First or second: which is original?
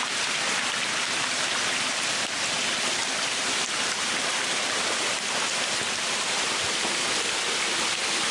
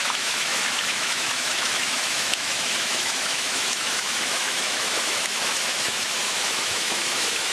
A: first